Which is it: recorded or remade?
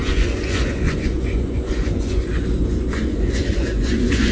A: remade